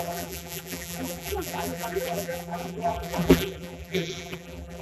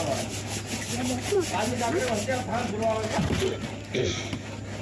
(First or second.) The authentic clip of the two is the second